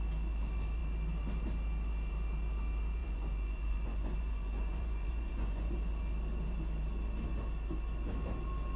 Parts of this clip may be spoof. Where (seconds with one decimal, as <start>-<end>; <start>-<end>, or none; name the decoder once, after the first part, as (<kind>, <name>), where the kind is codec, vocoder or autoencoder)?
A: 3.0-5.9 (vocoder, Vocos)